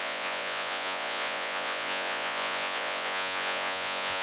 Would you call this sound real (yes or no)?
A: no